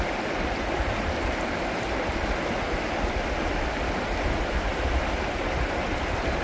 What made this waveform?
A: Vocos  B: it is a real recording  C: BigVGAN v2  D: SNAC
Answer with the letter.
B